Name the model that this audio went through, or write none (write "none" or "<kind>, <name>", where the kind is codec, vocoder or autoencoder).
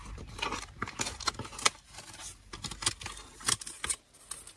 none